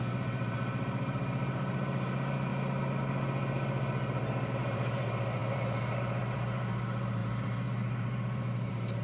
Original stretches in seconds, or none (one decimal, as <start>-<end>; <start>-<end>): 2.5-4.5

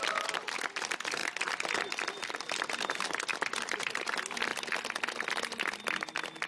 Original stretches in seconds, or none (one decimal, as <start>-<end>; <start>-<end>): 0.0-6.5

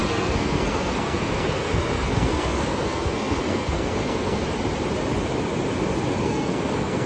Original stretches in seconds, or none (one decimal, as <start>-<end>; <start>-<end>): 4.4-6.2

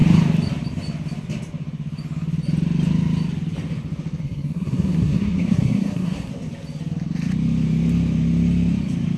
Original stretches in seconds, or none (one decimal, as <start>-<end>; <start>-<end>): 0.0-4.2; 6.3-9.2

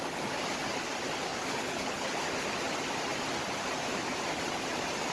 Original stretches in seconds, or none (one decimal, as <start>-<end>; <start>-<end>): 0.0-1.3; 2.2-5.1